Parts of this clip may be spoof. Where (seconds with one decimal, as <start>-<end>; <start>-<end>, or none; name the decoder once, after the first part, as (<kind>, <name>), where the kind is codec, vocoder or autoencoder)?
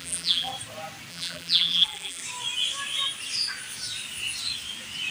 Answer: 0.0-0.5 (vocoder, BigVGAN v2); 1.1-2.2